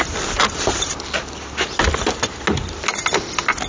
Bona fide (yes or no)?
yes